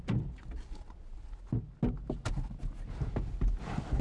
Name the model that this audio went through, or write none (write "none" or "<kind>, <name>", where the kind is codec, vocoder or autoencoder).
none